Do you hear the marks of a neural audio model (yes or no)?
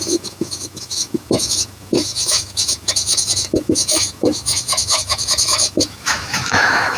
yes